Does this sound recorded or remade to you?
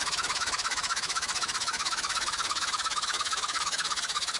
remade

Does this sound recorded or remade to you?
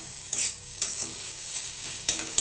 remade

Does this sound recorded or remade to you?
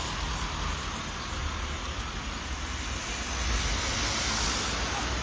recorded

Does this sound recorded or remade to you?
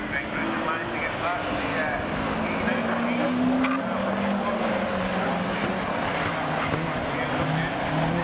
recorded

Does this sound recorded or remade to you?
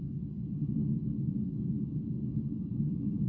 recorded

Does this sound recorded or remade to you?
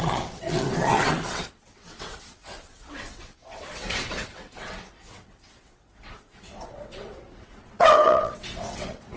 remade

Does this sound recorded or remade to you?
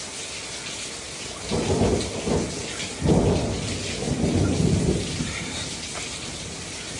recorded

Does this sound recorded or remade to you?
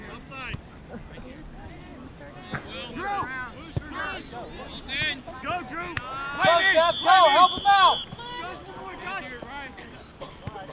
recorded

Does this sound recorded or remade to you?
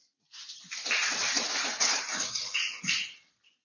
recorded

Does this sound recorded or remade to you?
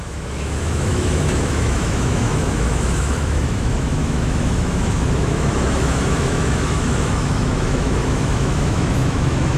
remade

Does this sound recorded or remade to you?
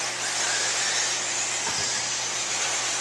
recorded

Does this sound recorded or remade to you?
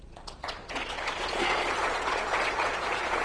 remade